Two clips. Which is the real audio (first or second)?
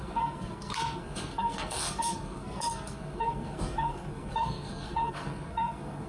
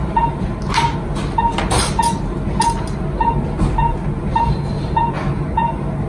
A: second